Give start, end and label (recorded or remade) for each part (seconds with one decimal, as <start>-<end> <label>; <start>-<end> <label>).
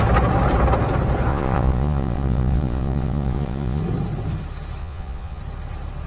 0.0-1.3 recorded; 1.3-3.8 remade; 3.8-4.8 recorded; 4.8-5.4 remade; 5.4-6.1 recorded